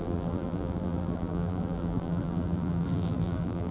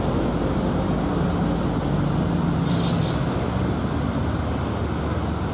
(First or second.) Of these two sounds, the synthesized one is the first